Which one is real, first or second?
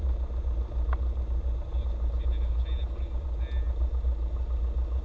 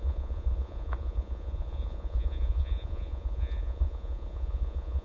first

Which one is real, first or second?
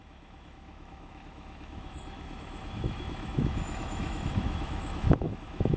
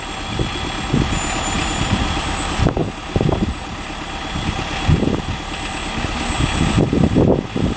second